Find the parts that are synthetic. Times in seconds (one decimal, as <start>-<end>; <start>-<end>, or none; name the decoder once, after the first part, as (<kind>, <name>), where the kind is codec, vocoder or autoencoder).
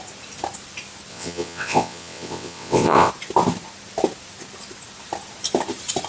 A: 1.1-3.1 (vocoder, WaveNeXt)